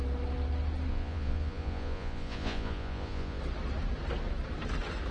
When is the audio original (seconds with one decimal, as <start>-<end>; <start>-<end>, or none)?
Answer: 0.0-0.9; 3.4-5.1